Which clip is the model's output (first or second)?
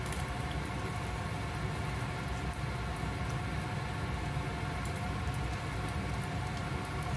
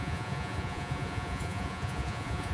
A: second